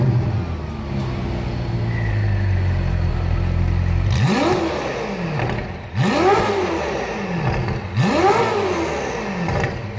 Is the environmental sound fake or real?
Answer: real